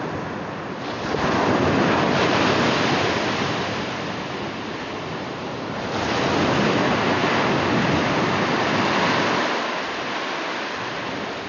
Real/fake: fake